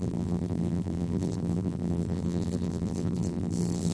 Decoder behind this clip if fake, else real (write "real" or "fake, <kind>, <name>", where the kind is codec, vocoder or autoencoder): fake, vocoder, BigVGAN v2